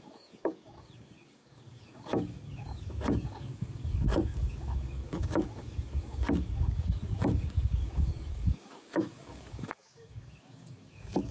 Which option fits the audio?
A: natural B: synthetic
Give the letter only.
B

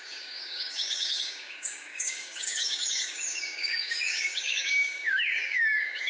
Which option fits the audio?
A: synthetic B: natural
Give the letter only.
A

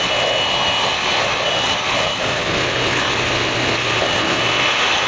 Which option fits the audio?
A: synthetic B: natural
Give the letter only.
B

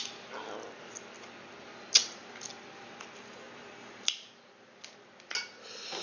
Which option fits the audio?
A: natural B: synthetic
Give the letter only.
A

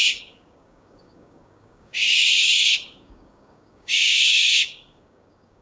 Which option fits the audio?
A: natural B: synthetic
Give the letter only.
B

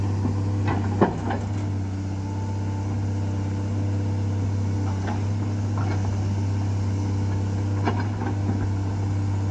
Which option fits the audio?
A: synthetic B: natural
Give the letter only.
B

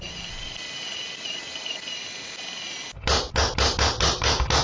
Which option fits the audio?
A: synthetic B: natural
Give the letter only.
B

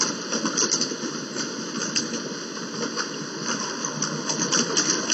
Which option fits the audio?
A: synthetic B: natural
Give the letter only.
B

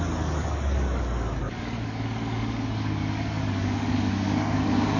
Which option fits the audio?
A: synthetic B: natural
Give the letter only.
A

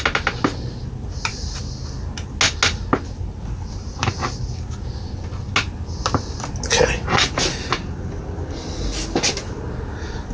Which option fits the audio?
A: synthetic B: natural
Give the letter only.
B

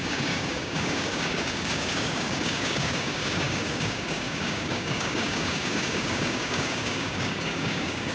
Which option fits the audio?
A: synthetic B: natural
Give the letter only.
A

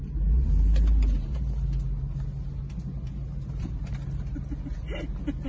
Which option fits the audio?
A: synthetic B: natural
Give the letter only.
B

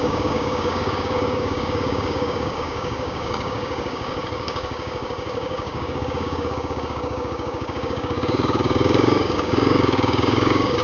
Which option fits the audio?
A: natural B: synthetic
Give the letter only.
B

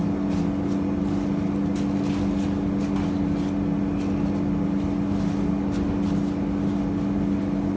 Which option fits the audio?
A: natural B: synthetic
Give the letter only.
A